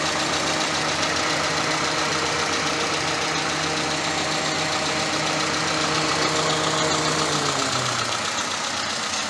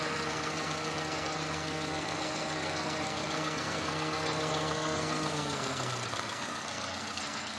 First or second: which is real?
first